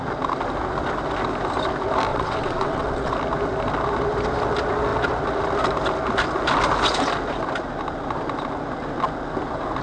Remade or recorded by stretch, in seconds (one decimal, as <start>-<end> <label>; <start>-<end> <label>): 0.0-2.1 recorded; 2.1-3.1 remade; 3.1-9.8 recorded